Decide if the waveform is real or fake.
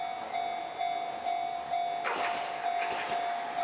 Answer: real